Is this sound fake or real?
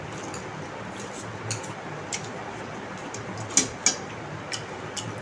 real